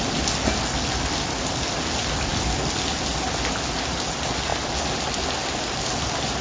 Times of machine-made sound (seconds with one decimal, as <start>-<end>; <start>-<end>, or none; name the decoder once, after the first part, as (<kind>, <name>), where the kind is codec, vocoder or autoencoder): none